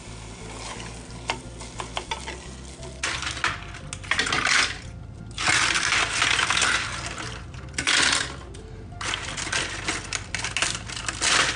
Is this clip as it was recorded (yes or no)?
yes